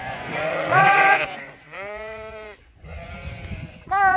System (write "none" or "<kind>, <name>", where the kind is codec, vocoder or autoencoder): vocoder, Vocos